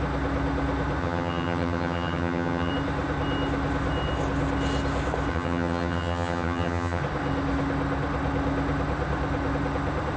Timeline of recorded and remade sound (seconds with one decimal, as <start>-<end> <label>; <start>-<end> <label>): 0.0-1.0 recorded; 1.0-2.7 remade; 2.7-5.3 recorded; 5.3-7.0 remade; 7.0-10.2 recorded